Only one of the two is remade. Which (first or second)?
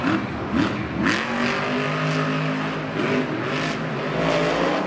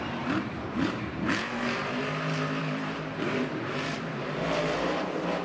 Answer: second